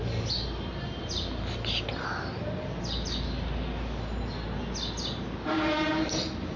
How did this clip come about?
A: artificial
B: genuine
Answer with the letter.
B